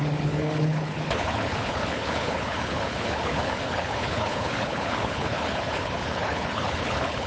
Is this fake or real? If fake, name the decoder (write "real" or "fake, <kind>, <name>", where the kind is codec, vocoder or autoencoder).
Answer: fake, codec, HILCodec